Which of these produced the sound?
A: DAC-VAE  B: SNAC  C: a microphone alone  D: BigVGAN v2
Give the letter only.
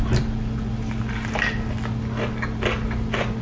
C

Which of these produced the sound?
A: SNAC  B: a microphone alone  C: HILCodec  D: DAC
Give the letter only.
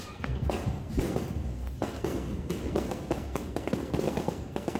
A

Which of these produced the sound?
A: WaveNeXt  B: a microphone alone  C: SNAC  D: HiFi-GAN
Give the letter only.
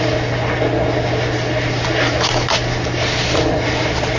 B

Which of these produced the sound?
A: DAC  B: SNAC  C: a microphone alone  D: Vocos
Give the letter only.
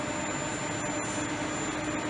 C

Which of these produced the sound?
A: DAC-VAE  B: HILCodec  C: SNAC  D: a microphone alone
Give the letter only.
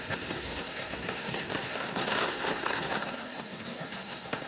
C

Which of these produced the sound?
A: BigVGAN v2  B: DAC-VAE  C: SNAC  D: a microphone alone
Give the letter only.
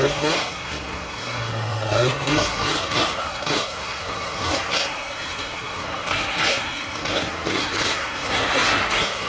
C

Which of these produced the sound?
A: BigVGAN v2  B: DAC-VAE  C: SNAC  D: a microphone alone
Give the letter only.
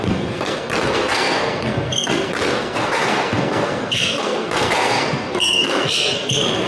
C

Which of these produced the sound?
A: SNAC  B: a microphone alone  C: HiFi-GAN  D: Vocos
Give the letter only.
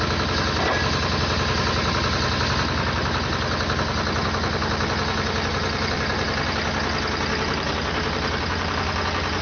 B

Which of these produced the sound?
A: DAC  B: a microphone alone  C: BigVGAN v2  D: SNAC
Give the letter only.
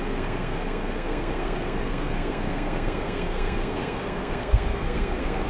D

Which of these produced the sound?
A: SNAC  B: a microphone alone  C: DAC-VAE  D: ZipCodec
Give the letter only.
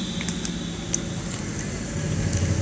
B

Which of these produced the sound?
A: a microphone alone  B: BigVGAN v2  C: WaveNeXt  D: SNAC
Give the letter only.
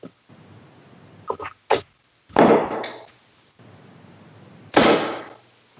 A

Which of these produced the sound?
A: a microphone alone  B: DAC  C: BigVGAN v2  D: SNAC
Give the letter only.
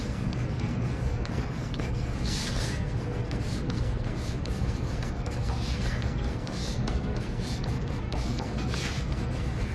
D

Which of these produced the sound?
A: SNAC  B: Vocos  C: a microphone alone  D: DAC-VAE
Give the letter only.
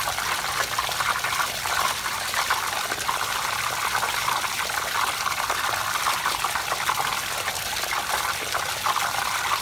C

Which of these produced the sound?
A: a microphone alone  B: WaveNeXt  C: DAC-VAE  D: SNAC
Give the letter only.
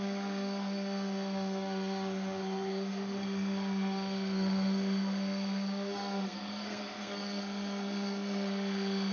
D